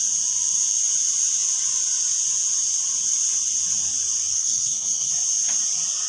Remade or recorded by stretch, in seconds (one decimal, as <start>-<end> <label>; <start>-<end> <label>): 0.0-4.3 recorded; 4.3-5.1 remade; 5.1-6.1 recorded